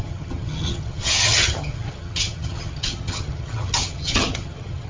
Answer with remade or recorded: remade